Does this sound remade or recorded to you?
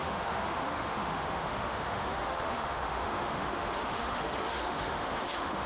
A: remade